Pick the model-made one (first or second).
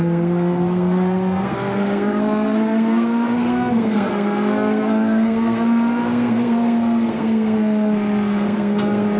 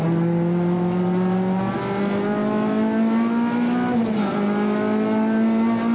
first